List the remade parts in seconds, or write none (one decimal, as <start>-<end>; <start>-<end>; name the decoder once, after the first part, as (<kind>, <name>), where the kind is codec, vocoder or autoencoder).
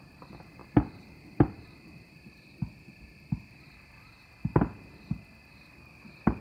0.6-2.1 (vocoder, BigVGAN v2)